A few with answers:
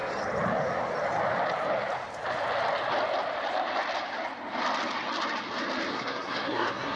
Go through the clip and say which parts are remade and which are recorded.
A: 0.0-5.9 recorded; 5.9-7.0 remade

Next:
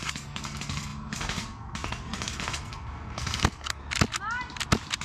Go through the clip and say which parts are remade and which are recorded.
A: 0.0-3.8 remade; 3.8-5.0 recorded